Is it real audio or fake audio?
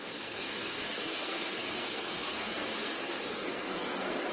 fake